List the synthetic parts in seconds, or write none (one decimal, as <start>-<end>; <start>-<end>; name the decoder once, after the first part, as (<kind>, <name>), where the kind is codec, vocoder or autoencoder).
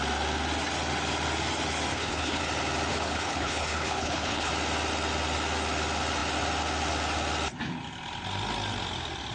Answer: 1.9-2.4 (codec, HILCodec); 2.9-4.5